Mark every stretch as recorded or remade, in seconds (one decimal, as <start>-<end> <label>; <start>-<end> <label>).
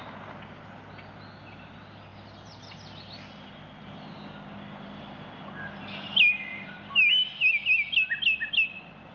0.0-6.5 recorded; 6.5-7.4 remade; 7.4-9.1 recorded